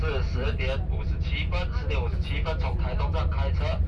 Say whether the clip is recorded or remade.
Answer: recorded